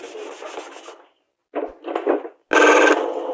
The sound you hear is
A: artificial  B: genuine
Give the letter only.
B